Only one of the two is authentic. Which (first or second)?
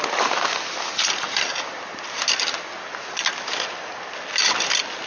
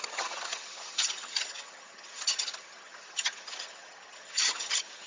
first